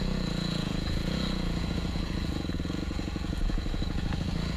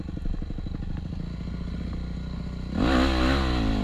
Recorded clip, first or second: second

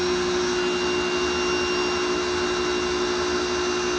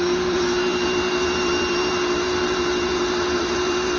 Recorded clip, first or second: first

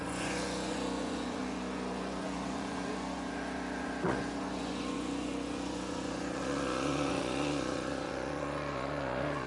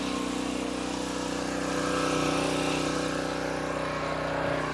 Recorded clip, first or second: second